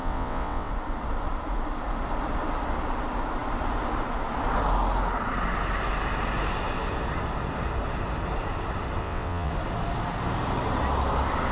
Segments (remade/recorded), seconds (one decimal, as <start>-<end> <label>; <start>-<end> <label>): 0.0-0.7 remade; 0.7-9.0 recorded; 9.0-9.5 remade; 9.5-11.5 recorded